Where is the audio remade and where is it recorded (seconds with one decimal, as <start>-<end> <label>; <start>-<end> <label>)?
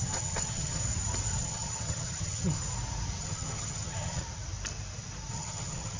0.0-0.8 remade; 0.8-1.4 recorded; 1.4-2.6 remade; 2.6-3.2 recorded; 3.2-4.2 remade; 4.2-5.3 recorded; 5.3-6.0 remade